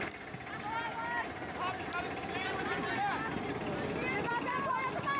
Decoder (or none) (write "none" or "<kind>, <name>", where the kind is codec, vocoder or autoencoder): none